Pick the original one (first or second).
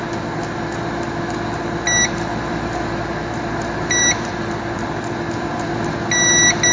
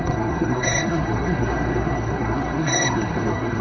first